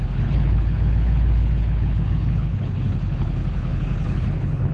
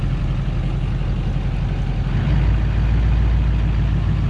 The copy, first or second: first